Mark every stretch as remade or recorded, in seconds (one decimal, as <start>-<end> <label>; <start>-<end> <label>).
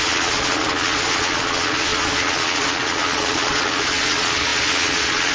0.0-5.3 remade